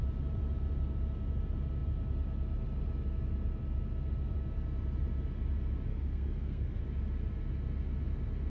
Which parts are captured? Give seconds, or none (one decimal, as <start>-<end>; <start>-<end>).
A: 0.0-5.9; 6.8-8.5